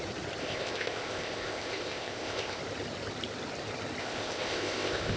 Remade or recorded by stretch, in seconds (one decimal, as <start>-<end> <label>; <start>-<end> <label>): 0.0-0.4 recorded; 0.4-2.6 remade; 2.6-4.0 recorded; 4.0-5.2 remade